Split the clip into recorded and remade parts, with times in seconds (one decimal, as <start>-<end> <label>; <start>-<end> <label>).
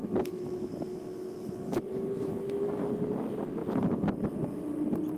0.0-2.8 remade; 2.8-5.2 recorded